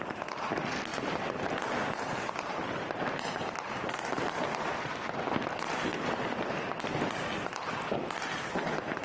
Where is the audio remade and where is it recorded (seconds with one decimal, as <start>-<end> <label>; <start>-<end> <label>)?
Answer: 0.0-0.9 remade; 0.9-3.1 recorded; 3.1-5.9 remade; 5.9-8.2 recorded; 8.2-9.0 remade